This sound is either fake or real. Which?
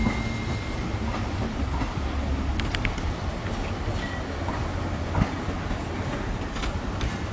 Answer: real